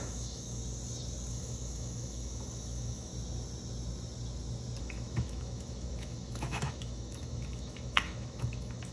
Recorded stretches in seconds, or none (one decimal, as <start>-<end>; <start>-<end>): 0.6-1.3; 3.1-4.8